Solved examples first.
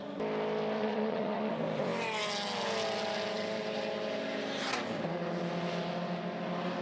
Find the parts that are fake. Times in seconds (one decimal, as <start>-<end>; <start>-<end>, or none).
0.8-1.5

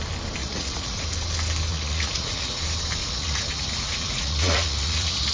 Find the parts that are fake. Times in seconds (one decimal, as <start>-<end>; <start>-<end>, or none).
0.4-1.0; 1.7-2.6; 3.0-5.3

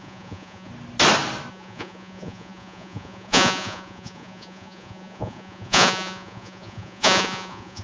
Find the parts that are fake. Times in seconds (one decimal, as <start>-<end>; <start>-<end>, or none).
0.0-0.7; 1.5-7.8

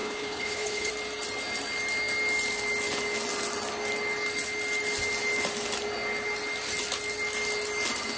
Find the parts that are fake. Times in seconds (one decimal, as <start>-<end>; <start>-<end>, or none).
0.0-0.9

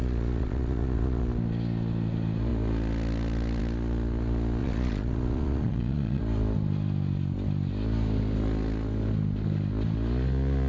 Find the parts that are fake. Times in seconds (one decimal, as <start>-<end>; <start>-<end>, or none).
0.0-1.2; 4.6-6.2